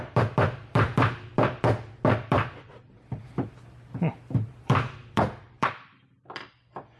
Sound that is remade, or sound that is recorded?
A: remade